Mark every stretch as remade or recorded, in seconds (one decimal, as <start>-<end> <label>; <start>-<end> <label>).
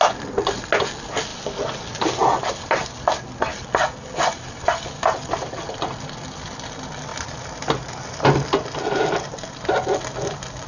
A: 0.0-10.7 recorded